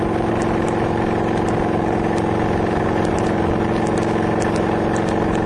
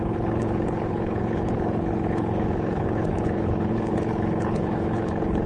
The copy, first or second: second